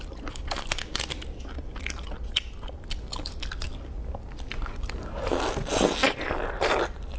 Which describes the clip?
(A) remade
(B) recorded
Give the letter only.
B